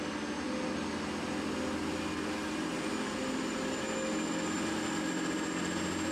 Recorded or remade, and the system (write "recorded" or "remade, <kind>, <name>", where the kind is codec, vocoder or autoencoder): recorded